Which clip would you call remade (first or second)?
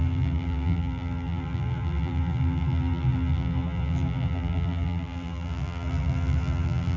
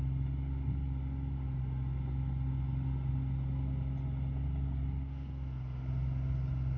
first